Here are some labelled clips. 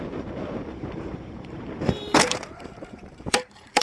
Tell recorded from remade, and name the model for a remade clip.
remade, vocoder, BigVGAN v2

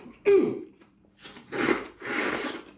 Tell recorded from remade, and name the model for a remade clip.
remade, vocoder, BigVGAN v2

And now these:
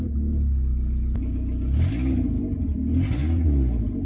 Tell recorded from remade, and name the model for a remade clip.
recorded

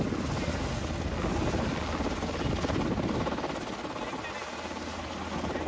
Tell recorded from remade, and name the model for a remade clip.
recorded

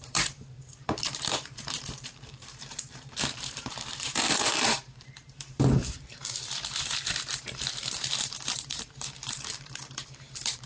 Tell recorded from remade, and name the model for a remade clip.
remade, vocoder, BigVGAN v2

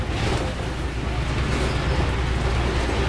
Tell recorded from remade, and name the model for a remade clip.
recorded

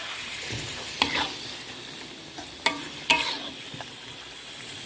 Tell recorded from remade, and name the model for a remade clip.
remade, vocoder, BigVGAN v2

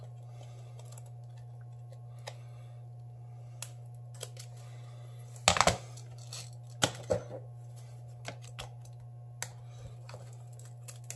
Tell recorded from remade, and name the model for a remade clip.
recorded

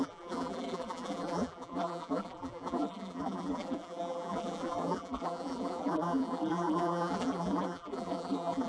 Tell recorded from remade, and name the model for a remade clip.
remade, vocoder, BigVGAN v2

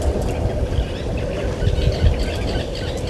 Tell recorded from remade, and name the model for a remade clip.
remade, vocoder, BigVGAN v2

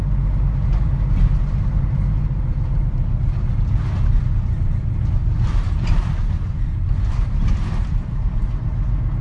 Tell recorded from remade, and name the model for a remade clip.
recorded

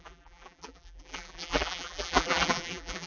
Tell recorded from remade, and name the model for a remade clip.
remade, vocoder, BigVGAN v2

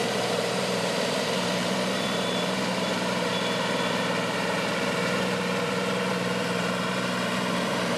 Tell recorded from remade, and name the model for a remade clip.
remade, vocoder, BigVGAN v2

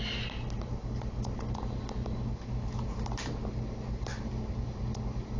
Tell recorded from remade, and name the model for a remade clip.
recorded